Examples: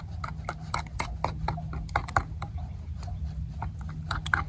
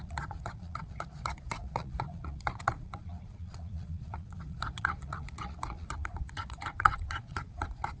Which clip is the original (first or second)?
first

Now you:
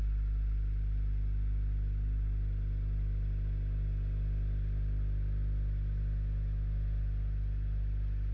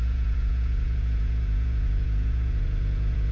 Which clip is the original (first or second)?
first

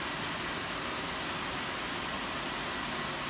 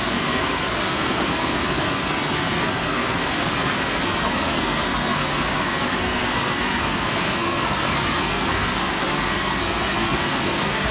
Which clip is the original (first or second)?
first